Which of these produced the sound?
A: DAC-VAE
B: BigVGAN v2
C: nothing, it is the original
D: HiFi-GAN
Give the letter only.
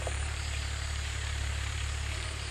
B